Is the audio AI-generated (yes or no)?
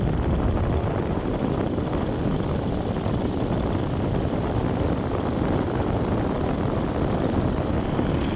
yes